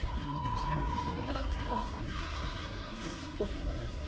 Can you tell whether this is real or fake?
fake